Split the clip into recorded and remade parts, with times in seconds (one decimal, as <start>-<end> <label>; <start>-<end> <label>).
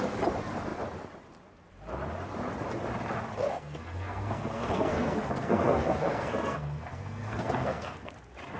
0.0-3.4 recorded; 3.4-8.1 remade; 8.1-8.6 recorded